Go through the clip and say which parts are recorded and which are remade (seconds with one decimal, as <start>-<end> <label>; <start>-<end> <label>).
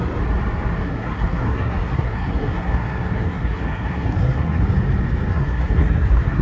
0.0-0.8 recorded; 0.8-4.6 remade; 4.6-5.3 recorded; 5.3-6.4 remade